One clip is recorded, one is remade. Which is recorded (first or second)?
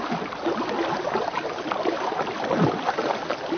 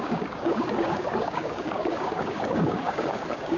first